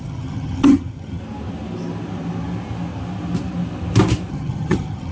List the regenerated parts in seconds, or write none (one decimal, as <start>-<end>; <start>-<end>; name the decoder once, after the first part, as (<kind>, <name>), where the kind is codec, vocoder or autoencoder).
0.0-1.2 (vocoder, HiFi-GAN); 4.3-5.1